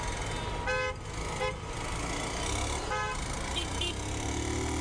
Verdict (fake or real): real